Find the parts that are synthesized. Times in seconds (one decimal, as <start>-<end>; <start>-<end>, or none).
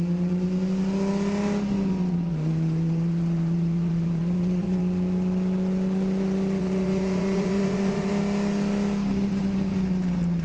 2.3-4.8; 6.6-8.1